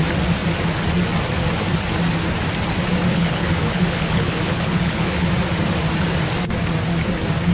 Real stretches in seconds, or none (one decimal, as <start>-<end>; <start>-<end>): 0.0-3.1; 5.3-7.5

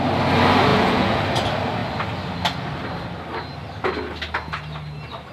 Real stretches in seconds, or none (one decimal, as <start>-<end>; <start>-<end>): 0.0-0.7; 1.2-5.3

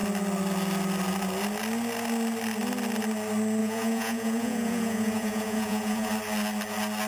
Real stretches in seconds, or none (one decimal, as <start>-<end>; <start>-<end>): 0.0-3.6; 6.1-7.1